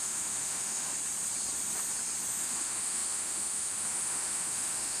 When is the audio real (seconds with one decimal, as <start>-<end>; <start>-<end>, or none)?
0.9-2.3